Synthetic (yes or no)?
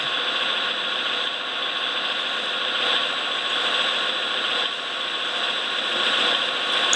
no